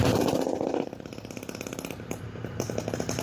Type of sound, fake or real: real